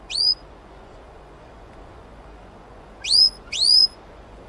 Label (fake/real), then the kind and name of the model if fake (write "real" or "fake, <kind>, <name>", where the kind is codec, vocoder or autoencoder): fake, vocoder, Vocos